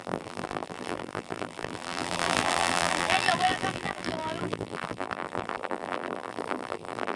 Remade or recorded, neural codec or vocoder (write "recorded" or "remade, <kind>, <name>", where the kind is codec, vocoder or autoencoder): remade, vocoder, BigVGAN v2